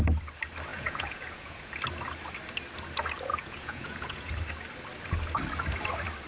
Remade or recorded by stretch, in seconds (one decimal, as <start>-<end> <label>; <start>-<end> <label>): 0.0-0.7 recorded; 0.7-1.7 remade; 1.7-3.3 recorded; 3.3-4.3 remade; 4.3-6.3 recorded